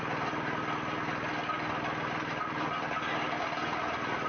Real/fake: real